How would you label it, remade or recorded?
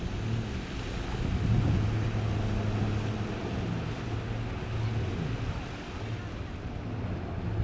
recorded